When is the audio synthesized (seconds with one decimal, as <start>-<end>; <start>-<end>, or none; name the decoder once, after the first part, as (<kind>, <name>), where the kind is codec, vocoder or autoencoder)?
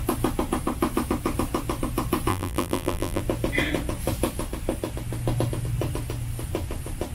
2.3-3.2 (vocoder, BigVGAN v2)